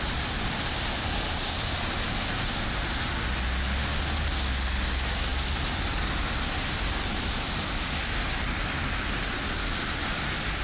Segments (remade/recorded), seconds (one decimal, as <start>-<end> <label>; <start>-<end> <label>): 0.0-10.6 recorded